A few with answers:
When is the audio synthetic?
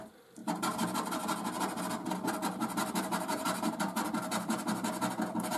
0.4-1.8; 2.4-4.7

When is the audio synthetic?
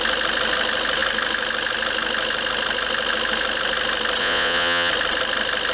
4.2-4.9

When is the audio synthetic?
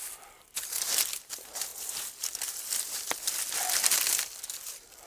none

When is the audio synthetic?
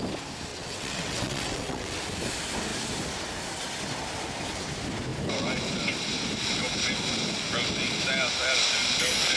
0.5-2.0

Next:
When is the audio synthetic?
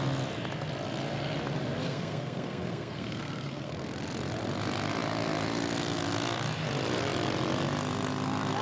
1.8-3.7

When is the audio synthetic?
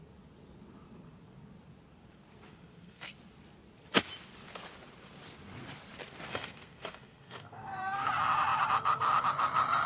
2.5-3.1; 6.3-8.1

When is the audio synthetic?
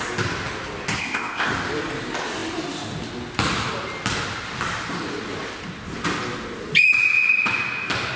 1.0-1.5